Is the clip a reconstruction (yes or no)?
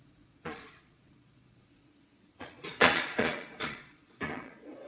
yes